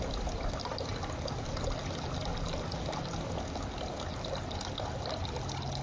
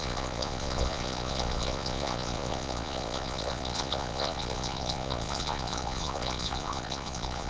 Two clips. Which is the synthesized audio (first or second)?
second